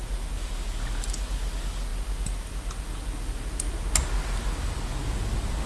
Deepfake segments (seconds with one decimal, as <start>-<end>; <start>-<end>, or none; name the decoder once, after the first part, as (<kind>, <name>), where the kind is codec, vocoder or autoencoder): none